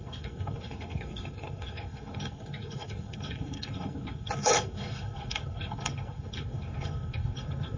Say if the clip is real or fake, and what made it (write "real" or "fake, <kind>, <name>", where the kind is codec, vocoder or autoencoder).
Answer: fake, codec, SNAC